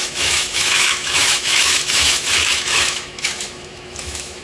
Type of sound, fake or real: fake